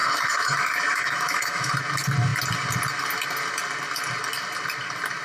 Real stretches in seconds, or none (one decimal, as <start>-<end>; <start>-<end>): 1.7-5.2